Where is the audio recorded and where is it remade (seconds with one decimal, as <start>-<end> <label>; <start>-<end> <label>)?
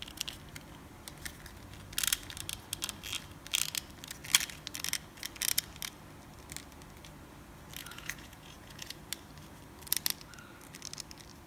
0.0-7.8 recorded; 7.8-9.0 remade; 9.0-11.5 recorded